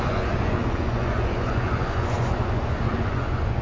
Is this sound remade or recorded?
remade